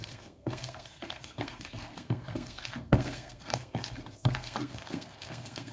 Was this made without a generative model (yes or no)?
no